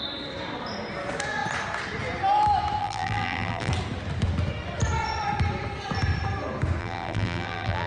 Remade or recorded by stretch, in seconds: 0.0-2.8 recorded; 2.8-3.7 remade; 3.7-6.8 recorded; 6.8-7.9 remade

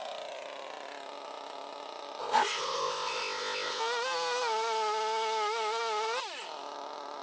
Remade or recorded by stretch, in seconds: 0.0-2.2 recorded; 2.2-3.8 remade; 3.8-7.2 recorded